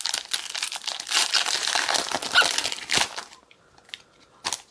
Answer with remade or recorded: recorded